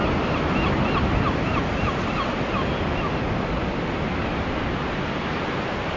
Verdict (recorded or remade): recorded